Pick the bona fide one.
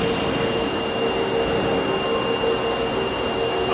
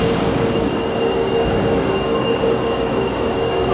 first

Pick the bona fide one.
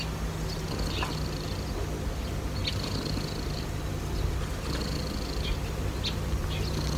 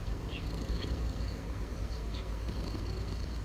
first